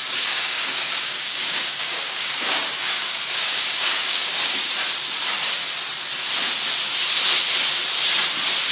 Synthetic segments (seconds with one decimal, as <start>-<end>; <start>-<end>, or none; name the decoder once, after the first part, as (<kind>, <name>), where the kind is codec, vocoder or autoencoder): 0.0-4.7 (codec, DAC)